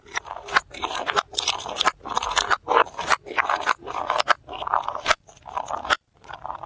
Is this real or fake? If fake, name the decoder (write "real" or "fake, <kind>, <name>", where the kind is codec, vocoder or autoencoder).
fake, vocoder, BigVGAN v2